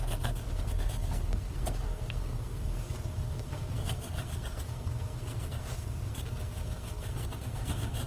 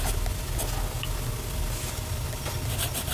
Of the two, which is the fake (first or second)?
first